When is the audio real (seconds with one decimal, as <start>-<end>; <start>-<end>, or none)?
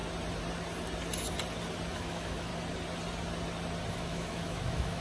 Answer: 0.0-1.9; 2.5-3.9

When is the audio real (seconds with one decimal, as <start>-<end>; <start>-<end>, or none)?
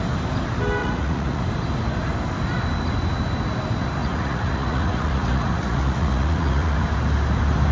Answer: 0.0-0.8; 1.4-4.0; 6.8-7.7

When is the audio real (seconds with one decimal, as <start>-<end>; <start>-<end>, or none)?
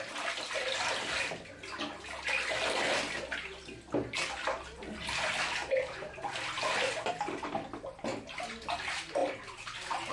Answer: 0.0-10.1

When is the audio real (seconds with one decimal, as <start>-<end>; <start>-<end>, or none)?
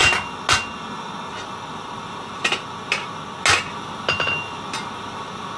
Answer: 0.0-5.6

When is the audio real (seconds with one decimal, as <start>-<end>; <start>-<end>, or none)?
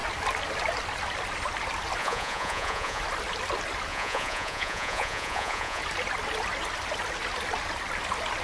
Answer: 0.0-2.0; 3.0-3.9; 5.8-8.4